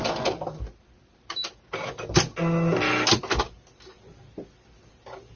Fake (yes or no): no